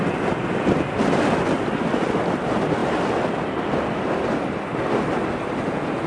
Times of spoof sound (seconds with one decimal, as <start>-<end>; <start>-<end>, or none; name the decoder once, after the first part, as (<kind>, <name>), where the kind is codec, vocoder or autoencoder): none